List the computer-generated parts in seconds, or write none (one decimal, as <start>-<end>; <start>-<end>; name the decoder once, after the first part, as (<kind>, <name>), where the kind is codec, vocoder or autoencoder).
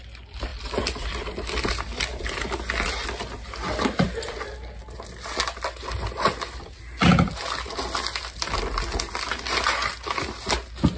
none